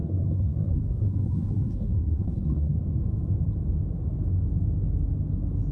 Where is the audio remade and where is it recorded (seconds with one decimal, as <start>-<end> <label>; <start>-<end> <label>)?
0.0-2.8 remade; 2.8-5.7 recorded